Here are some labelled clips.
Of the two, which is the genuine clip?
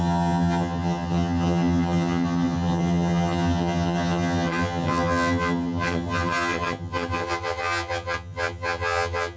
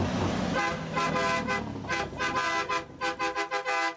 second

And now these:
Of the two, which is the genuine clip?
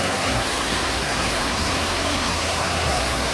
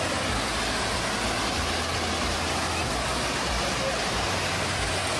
second